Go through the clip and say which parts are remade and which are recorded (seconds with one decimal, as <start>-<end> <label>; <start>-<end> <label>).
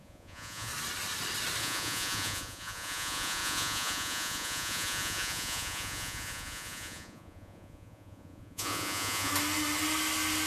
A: 0.0-0.7 remade; 0.7-1.6 recorded; 1.6-9.3 remade; 9.3-10.5 recorded